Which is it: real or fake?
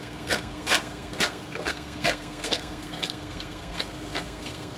fake